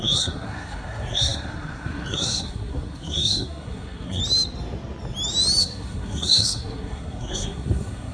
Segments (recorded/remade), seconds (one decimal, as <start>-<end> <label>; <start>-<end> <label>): 0.0-4.2 remade; 4.2-5.6 recorded; 5.6-8.1 remade